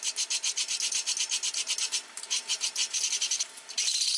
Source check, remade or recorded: recorded